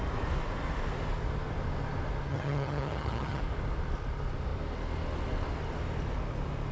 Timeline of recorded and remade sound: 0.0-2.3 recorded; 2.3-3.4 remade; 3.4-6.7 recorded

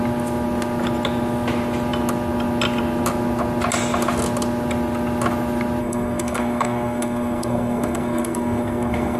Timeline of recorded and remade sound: 0.0-5.8 recorded; 5.8-9.2 remade

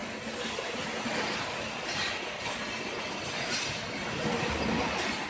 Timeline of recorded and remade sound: 0.0-5.3 recorded

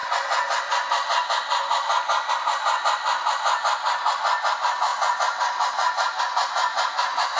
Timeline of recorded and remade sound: 0.0-4.9 recorded; 4.9-6.2 remade; 6.2-6.7 recorded; 6.7-7.4 remade

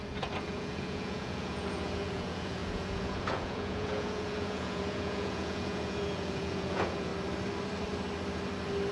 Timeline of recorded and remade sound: 0.0-7.1 remade; 7.1-8.9 recorded

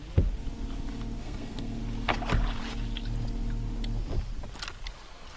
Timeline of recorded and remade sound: 0.0-1.2 recorded; 1.2-1.8 remade; 1.8-5.4 recorded

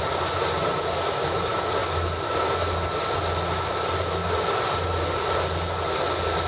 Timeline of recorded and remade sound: 0.0-6.5 recorded